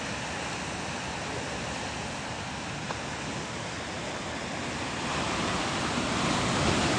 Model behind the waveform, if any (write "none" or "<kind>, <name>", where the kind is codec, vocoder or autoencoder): none